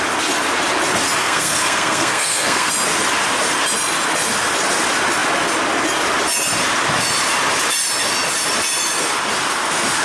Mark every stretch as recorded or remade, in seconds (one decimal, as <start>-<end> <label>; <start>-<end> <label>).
0.0-1.2 recorded; 1.2-2.7 remade; 2.7-10.0 recorded